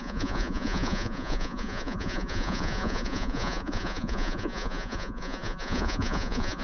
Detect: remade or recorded remade